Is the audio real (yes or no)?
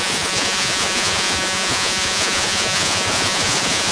no